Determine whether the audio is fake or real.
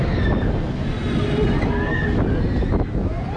real